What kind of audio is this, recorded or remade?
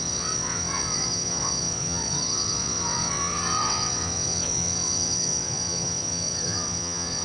remade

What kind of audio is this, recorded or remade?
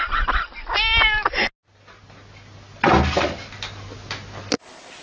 recorded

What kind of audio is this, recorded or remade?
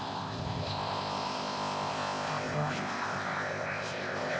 remade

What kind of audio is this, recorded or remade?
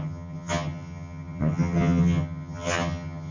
remade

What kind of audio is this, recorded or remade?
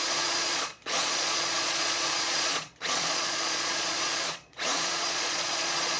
remade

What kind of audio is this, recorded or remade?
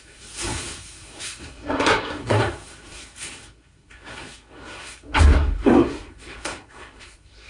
remade